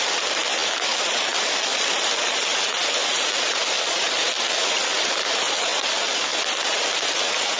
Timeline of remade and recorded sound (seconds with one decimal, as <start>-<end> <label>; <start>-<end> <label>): 0.0-7.6 recorded